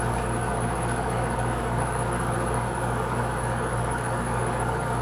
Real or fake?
fake